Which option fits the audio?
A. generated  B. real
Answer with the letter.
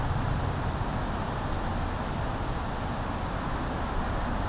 B